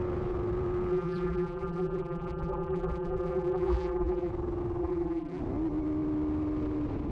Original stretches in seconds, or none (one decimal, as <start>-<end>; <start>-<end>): 0.0-0.9; 4.3-4.8; 5.4-7.1